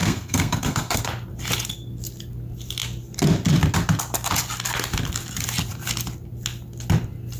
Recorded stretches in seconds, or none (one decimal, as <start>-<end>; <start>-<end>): 1.0-7.4